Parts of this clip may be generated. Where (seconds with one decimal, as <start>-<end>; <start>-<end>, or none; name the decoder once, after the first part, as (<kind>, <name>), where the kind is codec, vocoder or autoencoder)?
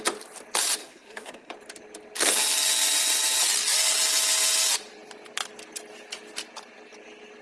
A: 0.8-1.5 (codec, SNAC)